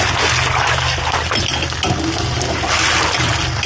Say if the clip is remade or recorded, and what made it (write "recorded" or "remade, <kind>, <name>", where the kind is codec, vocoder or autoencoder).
recorded